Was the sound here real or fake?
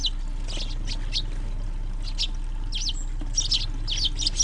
real